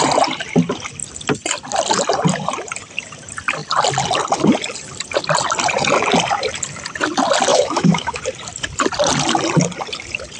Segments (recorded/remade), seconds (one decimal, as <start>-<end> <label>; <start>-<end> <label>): 0.0-7.5 recorded; 7.5-8.2 remade; 8.2-10.4 recorded